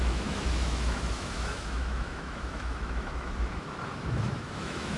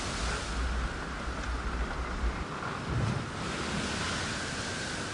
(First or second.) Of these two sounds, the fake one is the first